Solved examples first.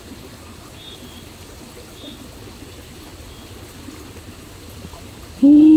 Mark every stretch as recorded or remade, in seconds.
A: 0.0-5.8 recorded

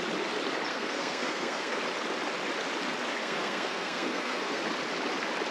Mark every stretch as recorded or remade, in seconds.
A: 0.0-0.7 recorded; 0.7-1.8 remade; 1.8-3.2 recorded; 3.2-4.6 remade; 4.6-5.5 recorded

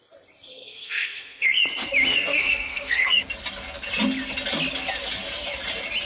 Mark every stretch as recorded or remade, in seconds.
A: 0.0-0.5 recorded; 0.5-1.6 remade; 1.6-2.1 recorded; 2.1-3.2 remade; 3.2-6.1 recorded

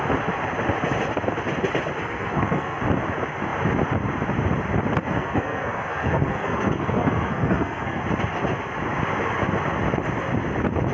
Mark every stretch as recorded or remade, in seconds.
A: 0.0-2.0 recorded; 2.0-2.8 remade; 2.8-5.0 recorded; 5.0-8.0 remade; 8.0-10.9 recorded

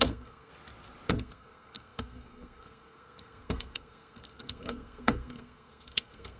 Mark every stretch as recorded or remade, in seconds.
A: 0.0-0.5 remade; 0.5-1.1 recorded; 1.1-6.4 remade